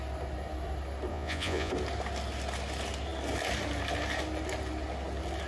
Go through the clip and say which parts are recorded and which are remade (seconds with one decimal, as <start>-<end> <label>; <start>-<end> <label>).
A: 0.0-1.1 recorded; 1.1-1.7 remade; 1.7-5.5 recorded